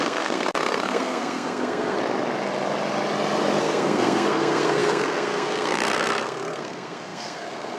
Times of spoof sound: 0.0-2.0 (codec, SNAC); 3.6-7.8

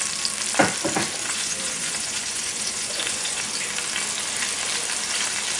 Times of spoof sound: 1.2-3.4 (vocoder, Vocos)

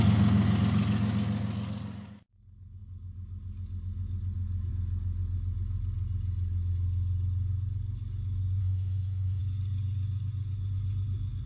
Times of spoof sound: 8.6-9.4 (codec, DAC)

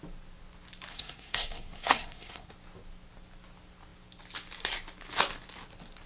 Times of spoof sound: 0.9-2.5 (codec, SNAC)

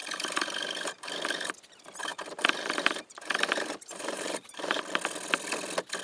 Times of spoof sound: 0.0-1.5 (vocoder, BigVGAN v2); 2.1-4.8

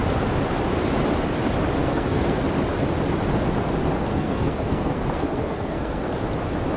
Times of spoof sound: 1.8-2.4 (codec, SNAC); 4.1-6.1

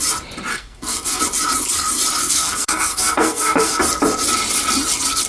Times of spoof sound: 0.5-1.2 (codec, SNAC); 2.2-3.8

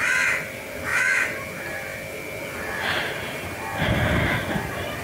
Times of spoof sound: none